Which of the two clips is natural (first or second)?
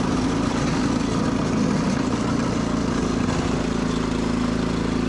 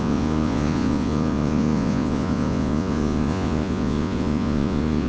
first